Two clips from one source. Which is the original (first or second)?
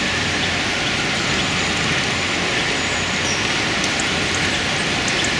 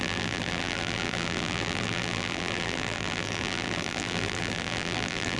first